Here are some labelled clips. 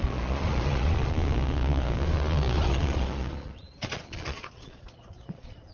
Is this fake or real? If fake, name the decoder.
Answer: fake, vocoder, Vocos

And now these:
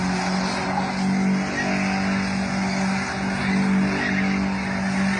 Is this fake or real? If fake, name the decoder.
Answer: real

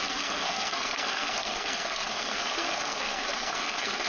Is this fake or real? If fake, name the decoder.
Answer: fake, codec, SNAC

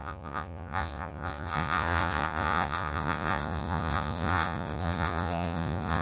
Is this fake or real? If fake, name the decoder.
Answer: fake, vocoder, Vocos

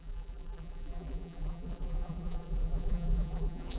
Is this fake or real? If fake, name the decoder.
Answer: fake, vocoder, BigVGAN v2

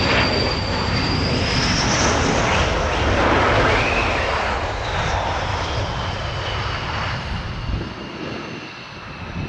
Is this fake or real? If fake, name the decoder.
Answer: real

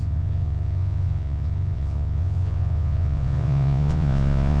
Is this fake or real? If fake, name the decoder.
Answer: fake, vocoder, Vocos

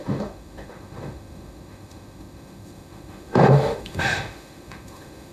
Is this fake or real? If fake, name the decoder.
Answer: fake, autoencoder, DAC-VAE